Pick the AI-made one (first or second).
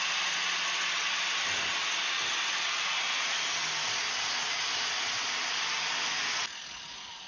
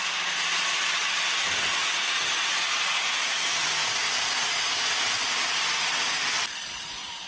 second